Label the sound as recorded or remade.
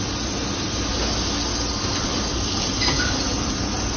recorded